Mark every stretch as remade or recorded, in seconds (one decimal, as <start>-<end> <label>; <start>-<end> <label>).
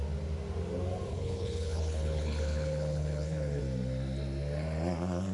0.0-1.1 recorded; 1.1-3.6 remade; 3.6-5.3 recorded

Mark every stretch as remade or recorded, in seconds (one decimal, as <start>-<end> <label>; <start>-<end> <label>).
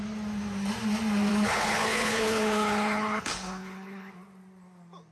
0.0-1.3 recorded; 1.3-4.1 remade; 4.1-5.1 recorded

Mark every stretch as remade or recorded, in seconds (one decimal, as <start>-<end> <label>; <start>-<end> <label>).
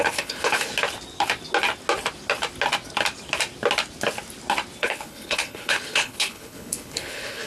0.0-0.7 remade; 0.7-4.8 recorded; 4.8-7.5 remade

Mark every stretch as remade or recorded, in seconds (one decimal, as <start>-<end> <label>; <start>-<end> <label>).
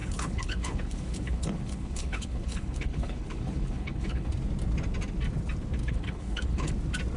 0.0-4.3 remade; 4.3-5.8 recorded; 5.8-6.7 remade; 6.7-7.2 recorded